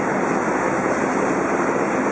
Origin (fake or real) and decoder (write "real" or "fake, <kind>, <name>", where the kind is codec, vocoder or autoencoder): real